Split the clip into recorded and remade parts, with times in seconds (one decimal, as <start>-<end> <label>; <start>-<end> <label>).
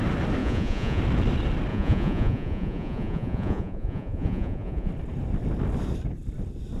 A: 0.0-0.4 recorded; 0.4-1.0 remade; 1.0-1.7 recorded; 1.7-4.9 remade; 4.9-6.8 recorded